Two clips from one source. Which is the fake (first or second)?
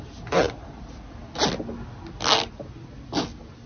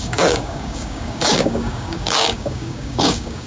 second